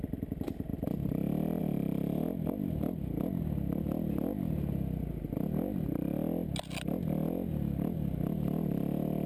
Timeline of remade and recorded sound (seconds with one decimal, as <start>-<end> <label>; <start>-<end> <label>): 0.0-9.3 recorded